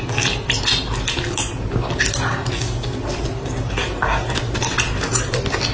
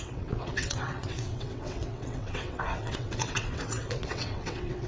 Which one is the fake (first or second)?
second